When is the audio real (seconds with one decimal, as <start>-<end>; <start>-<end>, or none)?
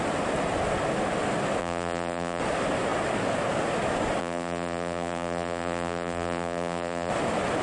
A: 0.0-1.6; 2.4-4.2; 7.1-7.6